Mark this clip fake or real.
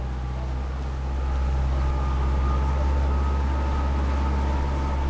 real